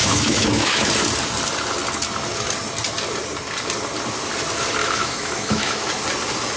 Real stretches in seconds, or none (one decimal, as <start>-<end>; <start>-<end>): 0.9-4.8; 5.9-6.6